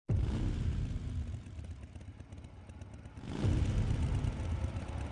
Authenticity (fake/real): real